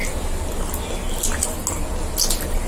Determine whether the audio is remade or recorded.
recorded